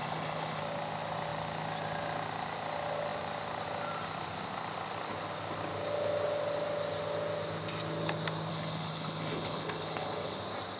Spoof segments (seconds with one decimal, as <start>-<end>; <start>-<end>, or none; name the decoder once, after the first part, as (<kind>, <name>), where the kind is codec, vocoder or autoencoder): 0.0-0.6 (codec, HILCodec); 8.5-10.4